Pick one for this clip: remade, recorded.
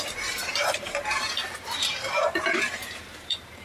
remade